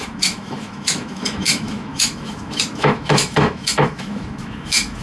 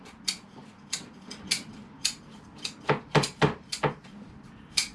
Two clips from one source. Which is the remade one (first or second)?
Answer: first